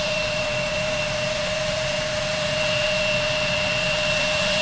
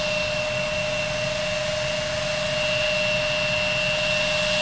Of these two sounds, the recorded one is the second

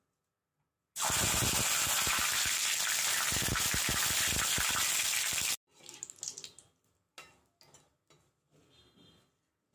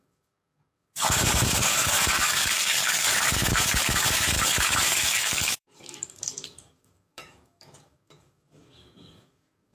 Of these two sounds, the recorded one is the first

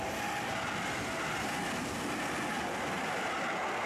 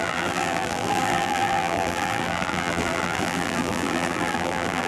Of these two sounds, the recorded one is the first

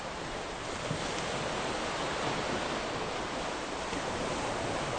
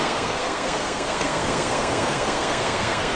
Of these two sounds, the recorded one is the first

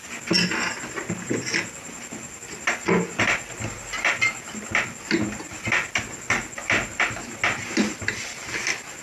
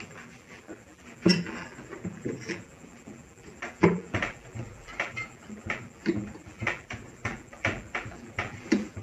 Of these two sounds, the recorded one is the first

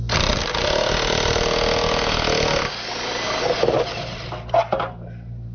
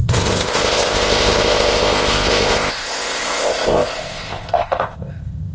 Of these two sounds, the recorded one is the first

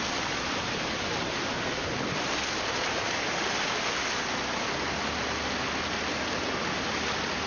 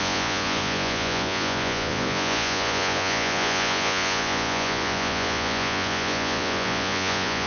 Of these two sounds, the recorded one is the first